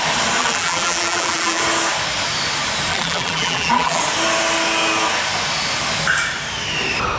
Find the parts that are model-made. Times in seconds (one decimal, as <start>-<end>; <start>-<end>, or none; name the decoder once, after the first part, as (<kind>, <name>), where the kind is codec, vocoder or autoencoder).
0.4-1.6 (vocoder, BigVGAN v2); 2.9-4.0